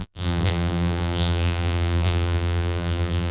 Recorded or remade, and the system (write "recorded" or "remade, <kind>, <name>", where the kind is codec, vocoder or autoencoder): remade, vocoder, BigVGAN v2